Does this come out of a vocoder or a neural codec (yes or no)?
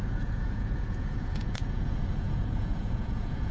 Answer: yes